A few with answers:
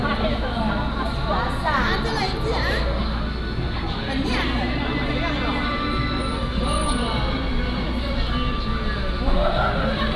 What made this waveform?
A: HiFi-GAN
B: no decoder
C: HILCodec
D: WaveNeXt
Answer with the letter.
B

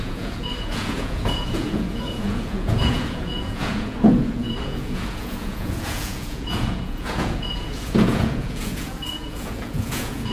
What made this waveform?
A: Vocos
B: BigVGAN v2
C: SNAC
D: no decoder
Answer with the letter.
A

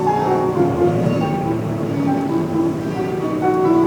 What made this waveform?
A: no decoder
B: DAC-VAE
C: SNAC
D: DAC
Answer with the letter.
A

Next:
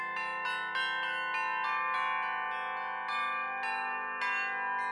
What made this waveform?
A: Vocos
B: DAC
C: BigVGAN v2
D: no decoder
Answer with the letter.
D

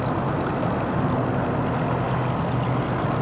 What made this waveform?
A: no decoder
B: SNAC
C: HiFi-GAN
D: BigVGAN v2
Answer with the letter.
A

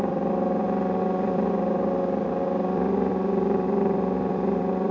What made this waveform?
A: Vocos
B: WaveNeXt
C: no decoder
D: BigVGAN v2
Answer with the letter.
D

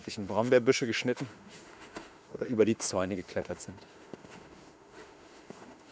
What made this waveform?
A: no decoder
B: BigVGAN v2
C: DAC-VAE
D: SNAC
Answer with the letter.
C